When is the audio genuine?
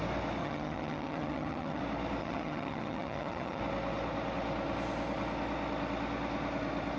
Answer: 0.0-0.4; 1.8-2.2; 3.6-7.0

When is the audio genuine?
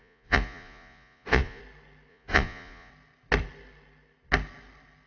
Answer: 1.6-2.1; 2.9-5.1